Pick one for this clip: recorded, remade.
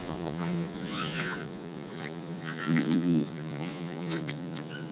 remade